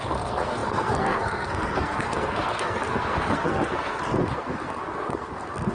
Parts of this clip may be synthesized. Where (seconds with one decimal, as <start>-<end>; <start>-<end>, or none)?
0.0-5.7

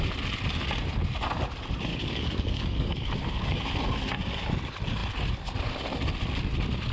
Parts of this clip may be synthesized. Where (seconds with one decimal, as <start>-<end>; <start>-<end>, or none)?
1.9-3.6

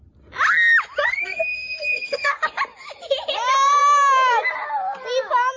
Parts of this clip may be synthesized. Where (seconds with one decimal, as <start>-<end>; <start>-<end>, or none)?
1.1-2.4

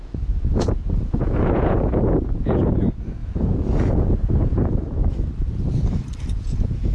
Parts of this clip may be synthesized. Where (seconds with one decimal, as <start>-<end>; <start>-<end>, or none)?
0.0-5.0; 6.3-6.9

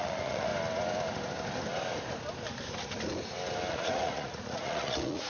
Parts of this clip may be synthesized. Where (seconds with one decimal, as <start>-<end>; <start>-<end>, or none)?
0.0-0.5; 3.7-5.3

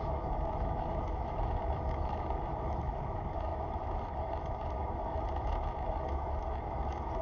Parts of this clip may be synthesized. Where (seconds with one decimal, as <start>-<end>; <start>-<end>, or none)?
0.0-7.2